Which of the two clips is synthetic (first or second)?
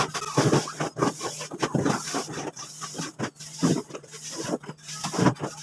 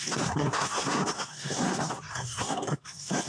second